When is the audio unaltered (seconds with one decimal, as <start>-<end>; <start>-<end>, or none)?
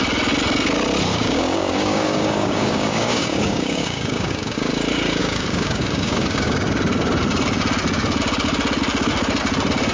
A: 0.0-1.1; 4.7-5.2; 6.5-9.9